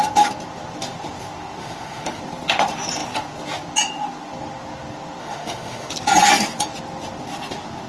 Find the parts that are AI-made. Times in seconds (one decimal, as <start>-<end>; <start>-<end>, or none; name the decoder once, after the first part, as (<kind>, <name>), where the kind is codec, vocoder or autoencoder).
1.6-2.2 (autoencoder, DAC-VAE); 5.2-5.9